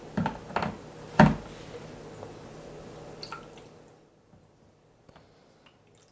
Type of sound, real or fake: real